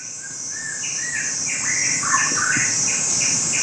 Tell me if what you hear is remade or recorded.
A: recorded